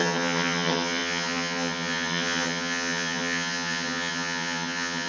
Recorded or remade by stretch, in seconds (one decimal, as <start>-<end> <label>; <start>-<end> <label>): 0.0-5.1 remade